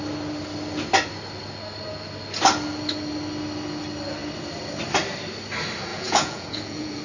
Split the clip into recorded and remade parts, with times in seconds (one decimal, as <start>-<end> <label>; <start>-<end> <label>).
0.0-5.9 recorded; 5.9-7.0 remade